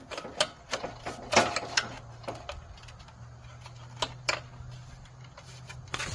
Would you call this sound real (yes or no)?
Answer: yes